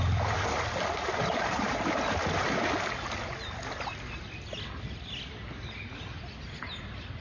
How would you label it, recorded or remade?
recorded